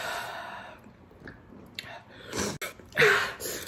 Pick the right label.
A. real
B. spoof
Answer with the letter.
A